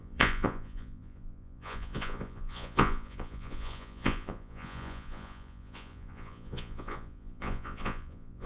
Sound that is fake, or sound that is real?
fake